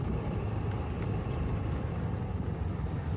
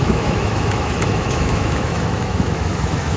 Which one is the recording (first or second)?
first